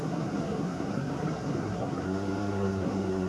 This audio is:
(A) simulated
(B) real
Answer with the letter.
A